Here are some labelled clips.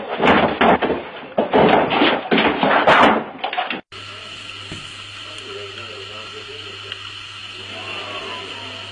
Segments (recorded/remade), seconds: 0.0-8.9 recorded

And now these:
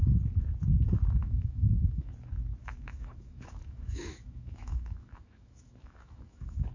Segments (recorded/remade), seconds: 0.0-1.2 recorded; 1.2-2.1 remade; 2.1-2.6 recorded; 2.6-6.7 remade